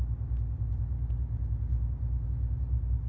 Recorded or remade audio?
recorded